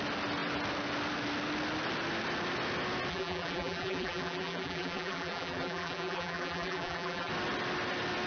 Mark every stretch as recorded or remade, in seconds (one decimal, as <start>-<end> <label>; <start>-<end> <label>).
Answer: 0.0-3.1 recorded; 3.1-7.3 remade; 7.3-8.3 recorded